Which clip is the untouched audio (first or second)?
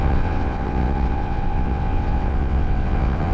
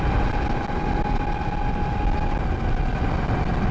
second